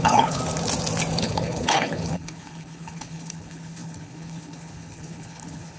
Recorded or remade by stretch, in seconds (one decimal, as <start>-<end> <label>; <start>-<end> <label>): 0.0-0.4 remade; 0.4-1.2 recorded; 1.2-5.8 remade